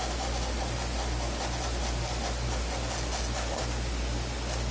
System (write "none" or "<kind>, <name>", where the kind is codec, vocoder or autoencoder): none